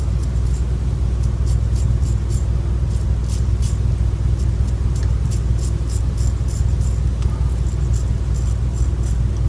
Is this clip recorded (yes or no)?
yes